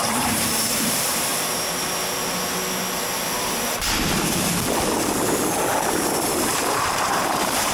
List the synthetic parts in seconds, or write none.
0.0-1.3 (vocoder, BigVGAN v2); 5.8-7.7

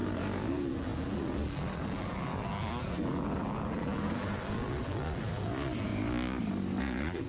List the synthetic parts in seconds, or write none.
0.5-5.9 (vocoder, BigVGAN v2); 6.8-7.3